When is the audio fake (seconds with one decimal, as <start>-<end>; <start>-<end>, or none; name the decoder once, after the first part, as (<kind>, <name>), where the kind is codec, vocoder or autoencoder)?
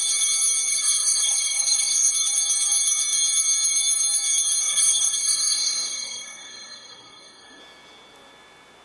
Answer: 0.7-2.1 (codec, SNAC); 4.6-7.6